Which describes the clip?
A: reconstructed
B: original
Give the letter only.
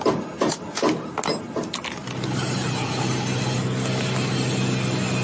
B